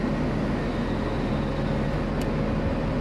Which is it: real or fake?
real